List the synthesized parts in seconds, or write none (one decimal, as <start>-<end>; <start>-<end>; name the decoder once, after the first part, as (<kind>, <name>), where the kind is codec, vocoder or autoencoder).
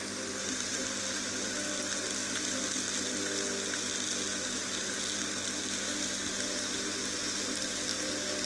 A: 0.4-1.0 (vocoder, BigVGAN v2); 4.3-5.0